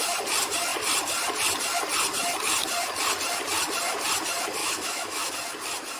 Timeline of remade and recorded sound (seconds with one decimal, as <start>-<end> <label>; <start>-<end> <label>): 0.0-4.6 recorded; 4.6-5.3 remade; 5.3-6.0 recorded